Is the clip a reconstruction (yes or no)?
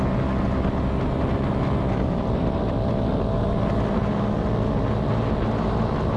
no